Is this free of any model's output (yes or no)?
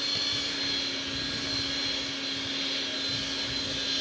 yes